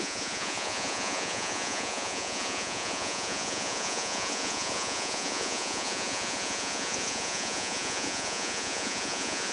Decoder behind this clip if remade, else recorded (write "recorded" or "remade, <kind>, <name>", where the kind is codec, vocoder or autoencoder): remade, vocoder, Vocos